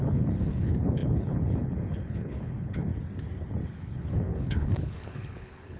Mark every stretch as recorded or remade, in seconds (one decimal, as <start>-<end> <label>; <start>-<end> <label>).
0.0-2.9 remade; 2.9-3.8 recorded; 3.8-5.8 remade